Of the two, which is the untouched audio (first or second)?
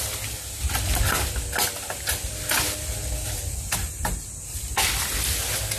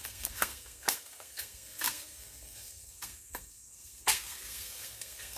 first